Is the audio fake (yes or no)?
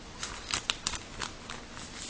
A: no